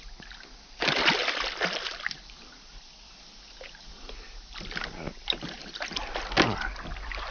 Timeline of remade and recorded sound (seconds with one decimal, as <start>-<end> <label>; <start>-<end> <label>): 0.0-7.3 recorded